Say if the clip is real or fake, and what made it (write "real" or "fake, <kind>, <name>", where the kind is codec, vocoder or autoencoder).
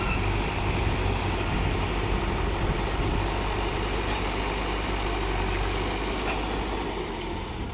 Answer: real